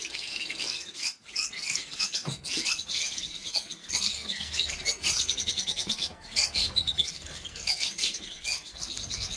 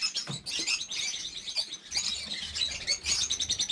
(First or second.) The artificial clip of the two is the first